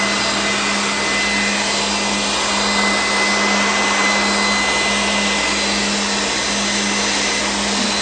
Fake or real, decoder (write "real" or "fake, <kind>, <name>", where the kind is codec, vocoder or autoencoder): real